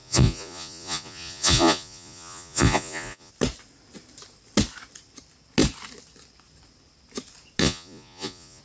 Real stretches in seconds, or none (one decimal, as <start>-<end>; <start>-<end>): 3.3-7.6